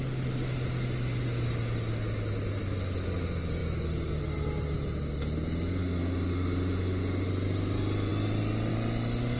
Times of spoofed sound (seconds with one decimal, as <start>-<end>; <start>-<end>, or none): 5.8-7.3